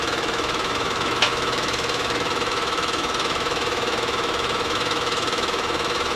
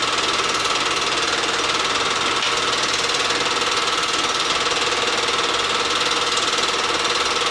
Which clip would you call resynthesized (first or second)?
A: first